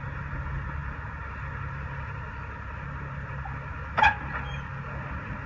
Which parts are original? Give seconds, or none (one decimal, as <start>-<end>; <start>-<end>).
0.0-5.5